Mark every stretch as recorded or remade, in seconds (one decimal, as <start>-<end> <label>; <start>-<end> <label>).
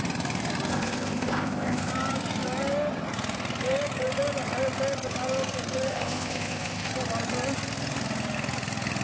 0.0-0.7 recorded; 0.7-1.9 remade; 1.9-5.9 recorded; 5.9-6.9 remade; 6.9-9.0 recorded